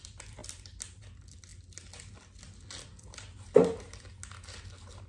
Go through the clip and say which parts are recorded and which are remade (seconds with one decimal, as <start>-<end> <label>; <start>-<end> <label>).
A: 0.0-5.1 recorded